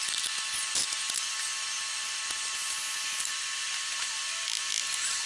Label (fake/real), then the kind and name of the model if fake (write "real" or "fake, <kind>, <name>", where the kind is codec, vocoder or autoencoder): real